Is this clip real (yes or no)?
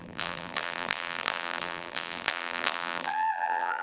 no